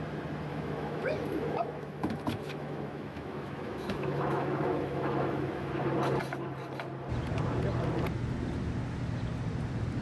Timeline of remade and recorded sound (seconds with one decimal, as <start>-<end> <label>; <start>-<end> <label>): 0.0-0.5 recorded; 0.5-5.7 remade; 5.7-10.0 recorded